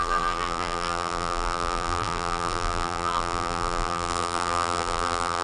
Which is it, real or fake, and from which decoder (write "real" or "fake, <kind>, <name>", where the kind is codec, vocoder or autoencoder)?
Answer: fake, vocoder, BigVGAN v2